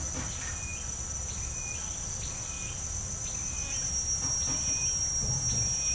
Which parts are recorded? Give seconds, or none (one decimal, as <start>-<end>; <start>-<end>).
0.0-5.9